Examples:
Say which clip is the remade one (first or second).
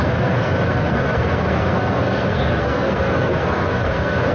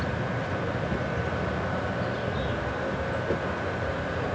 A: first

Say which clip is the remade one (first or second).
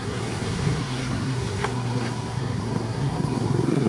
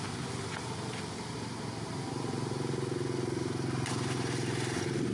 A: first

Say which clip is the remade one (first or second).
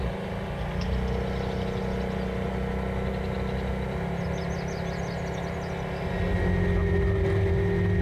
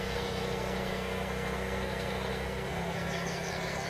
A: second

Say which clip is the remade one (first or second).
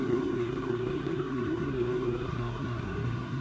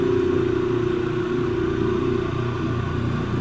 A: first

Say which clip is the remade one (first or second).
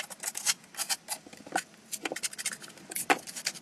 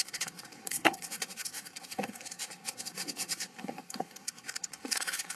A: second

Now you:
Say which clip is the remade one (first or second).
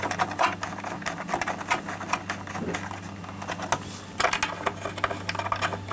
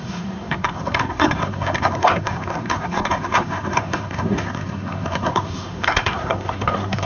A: second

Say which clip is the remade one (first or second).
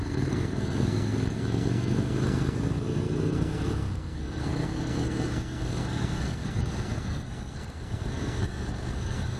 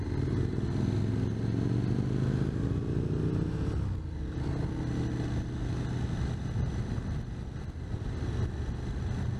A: first